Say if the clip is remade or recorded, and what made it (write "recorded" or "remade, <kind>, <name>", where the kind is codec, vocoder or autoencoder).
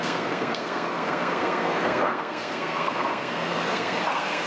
remade, codec, SNAC